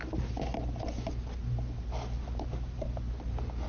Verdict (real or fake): real